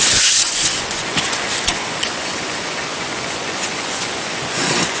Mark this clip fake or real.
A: fake